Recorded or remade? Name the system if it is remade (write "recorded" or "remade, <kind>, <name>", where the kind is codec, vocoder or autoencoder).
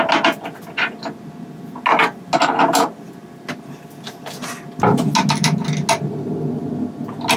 recorded